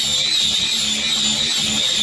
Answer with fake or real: real